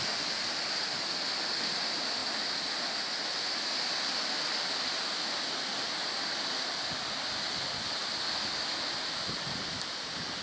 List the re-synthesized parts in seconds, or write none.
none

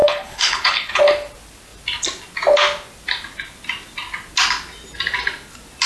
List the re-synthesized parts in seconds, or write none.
0.0-1.0

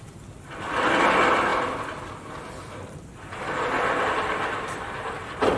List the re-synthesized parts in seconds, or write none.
none

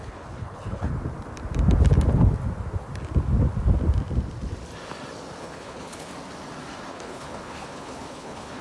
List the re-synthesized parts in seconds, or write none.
0.0-0.9; 5.4-6.1; 6.9-8.6

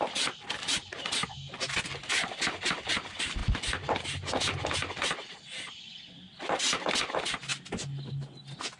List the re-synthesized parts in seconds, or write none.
none

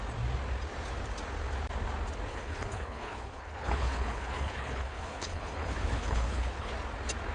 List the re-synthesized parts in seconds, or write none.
2.3-6.7

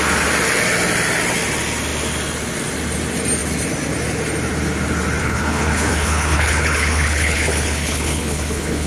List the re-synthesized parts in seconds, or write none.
5.2-8.9